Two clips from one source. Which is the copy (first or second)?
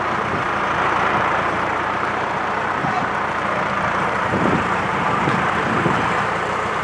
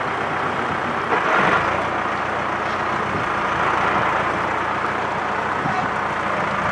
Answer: first